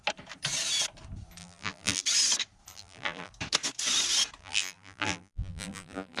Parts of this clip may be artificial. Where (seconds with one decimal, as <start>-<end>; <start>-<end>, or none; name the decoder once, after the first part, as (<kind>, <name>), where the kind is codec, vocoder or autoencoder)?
1.4-2.0 (vocoder, BigVGAN v2); 2.7-3.3; 4.4-6.2